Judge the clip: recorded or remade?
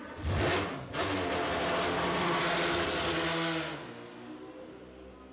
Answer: recorded